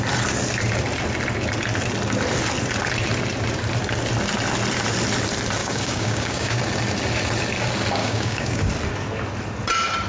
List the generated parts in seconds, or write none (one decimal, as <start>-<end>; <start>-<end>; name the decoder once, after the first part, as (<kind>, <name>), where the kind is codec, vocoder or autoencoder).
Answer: 5.6-6.6 (codec, DAC); 8.0-8.7